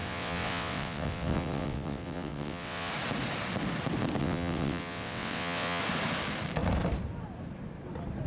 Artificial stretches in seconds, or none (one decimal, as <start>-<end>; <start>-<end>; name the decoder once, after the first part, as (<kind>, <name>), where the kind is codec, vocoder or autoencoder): 0.0-2.9 (vocoder, WaveNeXt); 4.2-5.8

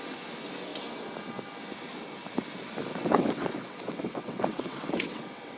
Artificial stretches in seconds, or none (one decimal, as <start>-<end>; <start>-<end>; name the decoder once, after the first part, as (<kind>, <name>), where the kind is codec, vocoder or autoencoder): 2.9-5.6 (vocoder, WaveNeXt)